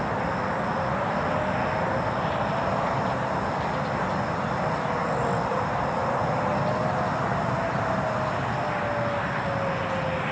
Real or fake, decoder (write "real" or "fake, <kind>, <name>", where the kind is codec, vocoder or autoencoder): real